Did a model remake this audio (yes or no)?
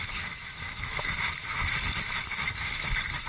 yes